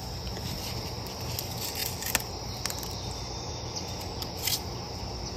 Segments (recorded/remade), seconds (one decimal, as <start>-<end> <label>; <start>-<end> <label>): 0.0-5.4 recorded